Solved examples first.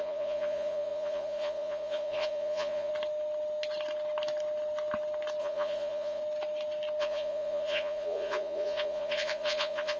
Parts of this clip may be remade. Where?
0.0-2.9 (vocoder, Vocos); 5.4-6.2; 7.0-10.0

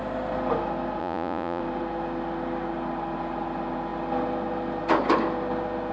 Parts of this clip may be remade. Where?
1.0-1.6 (vocoder, Vocos)